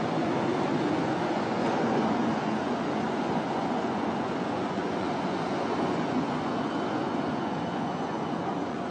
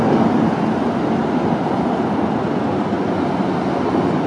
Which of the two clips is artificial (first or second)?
first